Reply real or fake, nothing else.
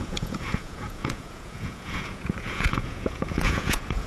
fake